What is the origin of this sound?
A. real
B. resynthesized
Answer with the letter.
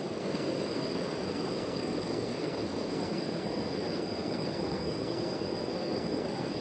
B